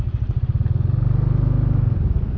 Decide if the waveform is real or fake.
real